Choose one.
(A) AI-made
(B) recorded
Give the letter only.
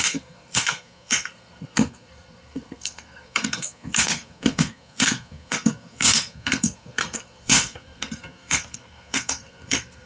A